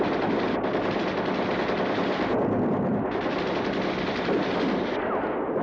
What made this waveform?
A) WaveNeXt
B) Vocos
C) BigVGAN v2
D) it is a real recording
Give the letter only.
D